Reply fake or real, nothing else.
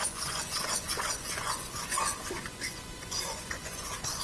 fake